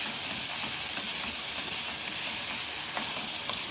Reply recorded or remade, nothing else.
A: recorded